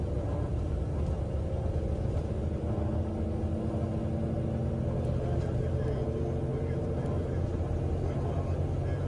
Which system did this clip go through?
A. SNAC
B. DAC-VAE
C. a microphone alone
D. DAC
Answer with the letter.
C